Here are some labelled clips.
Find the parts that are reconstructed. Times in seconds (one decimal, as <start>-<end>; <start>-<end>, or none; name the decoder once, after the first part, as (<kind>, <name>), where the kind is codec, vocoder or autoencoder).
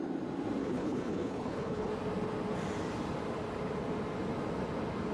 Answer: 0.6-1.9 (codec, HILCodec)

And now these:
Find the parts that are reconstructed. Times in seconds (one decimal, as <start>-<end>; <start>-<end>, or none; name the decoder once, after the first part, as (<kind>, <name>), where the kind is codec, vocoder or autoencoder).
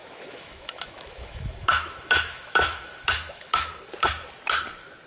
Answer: 0.0-3.7 (autoencoder, DAC-VAE)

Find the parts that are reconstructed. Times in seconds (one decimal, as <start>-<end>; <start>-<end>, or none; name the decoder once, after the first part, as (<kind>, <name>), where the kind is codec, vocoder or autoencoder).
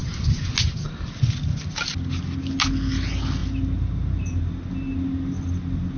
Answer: none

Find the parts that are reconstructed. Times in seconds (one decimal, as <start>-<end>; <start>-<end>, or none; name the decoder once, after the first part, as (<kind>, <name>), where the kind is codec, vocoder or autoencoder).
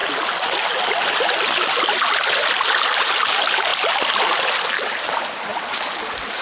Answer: none